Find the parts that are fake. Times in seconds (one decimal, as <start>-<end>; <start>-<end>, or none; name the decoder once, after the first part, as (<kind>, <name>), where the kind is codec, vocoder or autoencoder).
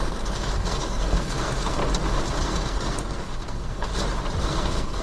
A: 0.0-1.8 (codec, SNAC); 2.4-3.9; 4.4-5.0